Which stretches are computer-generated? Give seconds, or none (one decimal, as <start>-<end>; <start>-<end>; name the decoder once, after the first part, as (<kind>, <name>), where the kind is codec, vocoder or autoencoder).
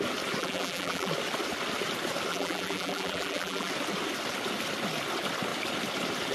0.4-1.1 (vocoder, BigVGAN v2); 2.3-3.7